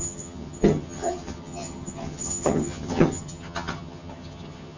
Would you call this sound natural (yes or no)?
no